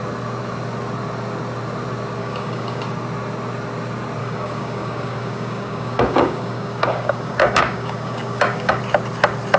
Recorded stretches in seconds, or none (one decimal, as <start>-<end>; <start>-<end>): 0.0-2.2; 2.8-4.2; 8.8-9.6